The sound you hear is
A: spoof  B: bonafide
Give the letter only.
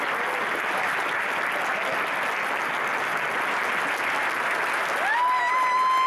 B